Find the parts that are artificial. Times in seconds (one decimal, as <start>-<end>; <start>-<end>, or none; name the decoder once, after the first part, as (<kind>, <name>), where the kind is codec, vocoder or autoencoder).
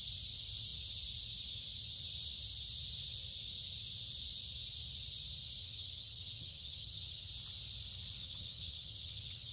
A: 5.6-7.3 (vocoder, HiFi-GAN); 8.2-9.5